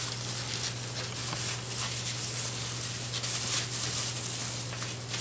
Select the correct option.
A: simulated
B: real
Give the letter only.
B